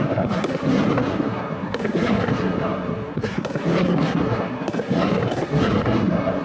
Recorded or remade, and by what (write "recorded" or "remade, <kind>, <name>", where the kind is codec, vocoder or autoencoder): remade, codec, SNAC